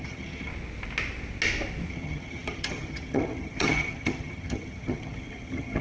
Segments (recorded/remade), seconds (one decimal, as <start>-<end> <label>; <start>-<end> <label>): 0.0-0.5 remade; 0.5-1.9 recorded; 1.9-5.8 remade